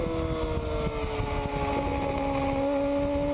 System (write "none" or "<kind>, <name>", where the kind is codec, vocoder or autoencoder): none